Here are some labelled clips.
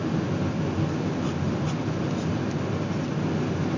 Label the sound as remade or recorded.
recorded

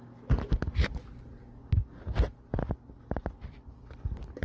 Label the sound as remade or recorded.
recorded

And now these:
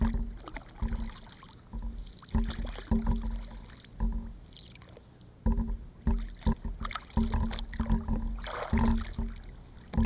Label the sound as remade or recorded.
recorded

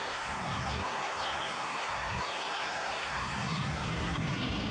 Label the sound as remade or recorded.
remade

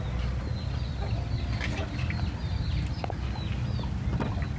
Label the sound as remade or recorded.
recorded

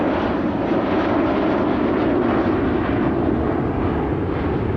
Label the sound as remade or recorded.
recorded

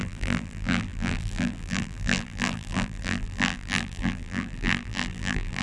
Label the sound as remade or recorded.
remade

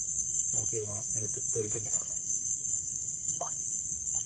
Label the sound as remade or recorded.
remade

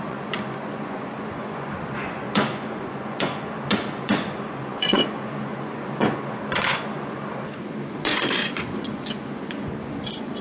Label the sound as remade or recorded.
remade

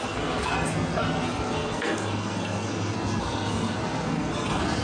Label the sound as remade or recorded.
remade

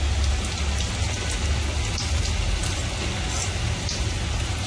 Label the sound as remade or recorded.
recorded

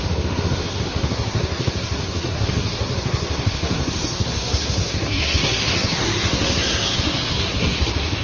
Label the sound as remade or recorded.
remade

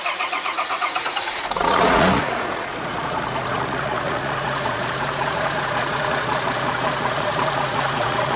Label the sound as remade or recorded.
remade